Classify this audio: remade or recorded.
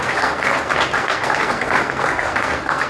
remade